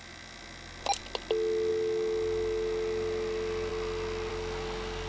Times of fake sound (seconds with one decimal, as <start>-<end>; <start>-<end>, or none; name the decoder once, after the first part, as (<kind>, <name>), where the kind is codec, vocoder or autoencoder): none